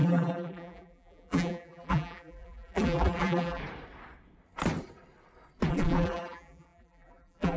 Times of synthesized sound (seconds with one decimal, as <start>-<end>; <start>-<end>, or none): 0.0-3.6; 5.7-7.6